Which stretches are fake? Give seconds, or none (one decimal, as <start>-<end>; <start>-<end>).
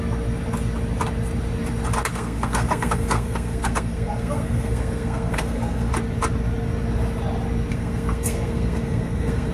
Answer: 2.1-5.9; 7.7-9.5